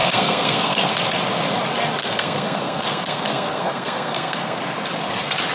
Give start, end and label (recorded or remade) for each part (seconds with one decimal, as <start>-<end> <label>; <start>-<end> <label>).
0.0-0.9 remade; 0.9-2.0 recorded; 2.0-4.6 remade; 4.6-5.5 recorded